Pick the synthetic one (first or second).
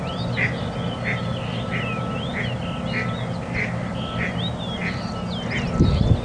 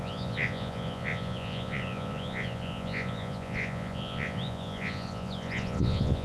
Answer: second